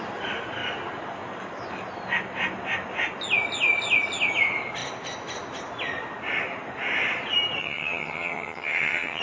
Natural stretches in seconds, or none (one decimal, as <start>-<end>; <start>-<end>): 0.0-7.6